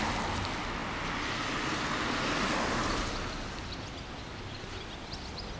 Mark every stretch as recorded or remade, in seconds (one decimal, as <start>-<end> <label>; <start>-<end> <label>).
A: 0.0-5.6 recorded

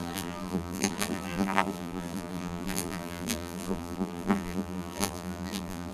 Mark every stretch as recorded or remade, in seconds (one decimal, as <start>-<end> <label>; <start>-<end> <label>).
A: 0.0-5.9 remade

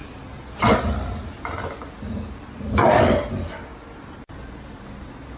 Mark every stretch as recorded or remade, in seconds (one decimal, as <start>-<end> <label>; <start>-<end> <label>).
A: 0.0-5.4 recorded

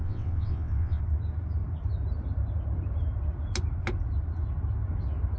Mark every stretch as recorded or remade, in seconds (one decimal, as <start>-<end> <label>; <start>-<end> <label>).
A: 0.0-1.0 remade; 1.0-5.4 recorded

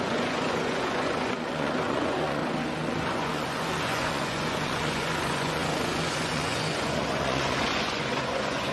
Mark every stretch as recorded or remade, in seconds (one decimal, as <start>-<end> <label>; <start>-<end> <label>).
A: 0.0-2.4 remade; 2.4-3.0 recorded; 3.0-8.7 remade